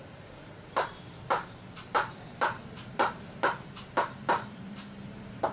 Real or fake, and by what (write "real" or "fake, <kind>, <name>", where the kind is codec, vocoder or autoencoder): fake, vocoder, BigVGAN v2